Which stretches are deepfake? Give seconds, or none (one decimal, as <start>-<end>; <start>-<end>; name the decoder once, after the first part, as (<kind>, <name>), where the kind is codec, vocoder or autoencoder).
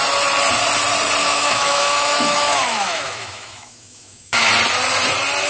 1.2-4.5 (autoencoder, DAC-VAE)